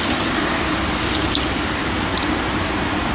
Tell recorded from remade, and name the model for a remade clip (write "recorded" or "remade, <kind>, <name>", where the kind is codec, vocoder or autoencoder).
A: recorded